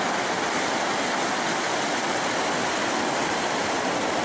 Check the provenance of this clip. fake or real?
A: real